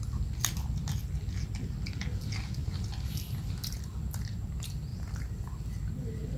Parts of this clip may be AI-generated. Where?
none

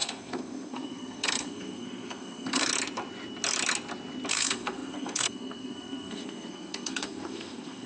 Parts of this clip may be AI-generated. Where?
0.0-2.7 (codec, SNAC); 4.3-7.9

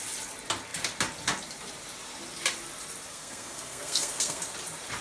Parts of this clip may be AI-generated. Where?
3.1-4.4 (codec, SNAC)